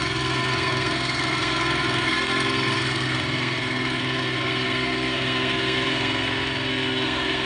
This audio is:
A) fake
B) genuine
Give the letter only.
A